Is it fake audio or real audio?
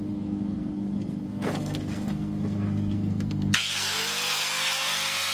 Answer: fake